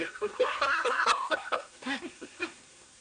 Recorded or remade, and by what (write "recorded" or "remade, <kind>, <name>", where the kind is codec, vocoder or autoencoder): remade, codec, SNAC